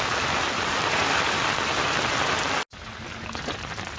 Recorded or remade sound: recorded